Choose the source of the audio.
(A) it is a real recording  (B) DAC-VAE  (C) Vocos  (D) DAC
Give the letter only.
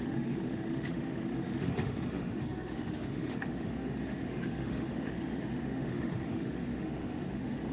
B